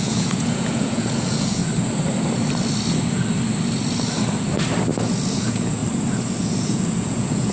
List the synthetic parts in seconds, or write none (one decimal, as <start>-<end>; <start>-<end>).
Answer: 0.0-1.6; 5.3-5.8; 6.4-7.5